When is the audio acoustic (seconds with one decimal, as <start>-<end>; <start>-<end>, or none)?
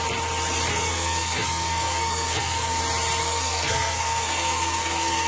0.0-0.7; 2.8-3.2